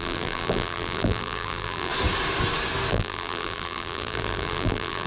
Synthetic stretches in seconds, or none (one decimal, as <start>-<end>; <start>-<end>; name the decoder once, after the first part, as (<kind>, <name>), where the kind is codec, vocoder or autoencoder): 0.0-1.9 (vocoder, BigVGAN v2); 2.9-5.1